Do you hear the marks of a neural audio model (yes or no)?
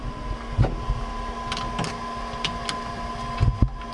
no